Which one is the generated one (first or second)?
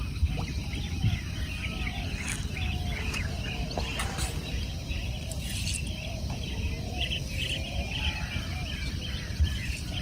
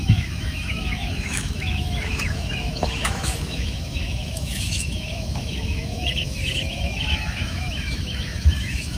second